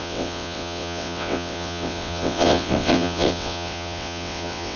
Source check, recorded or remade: remade